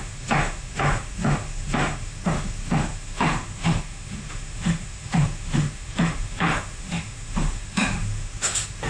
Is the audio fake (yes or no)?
yes